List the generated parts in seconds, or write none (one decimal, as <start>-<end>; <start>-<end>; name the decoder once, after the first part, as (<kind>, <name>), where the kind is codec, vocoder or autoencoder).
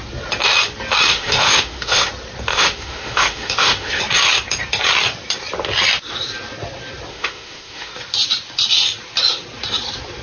1.1-2.1 (autoencoder, DAC-VAE); 2.5-4.0; 7.1-7.9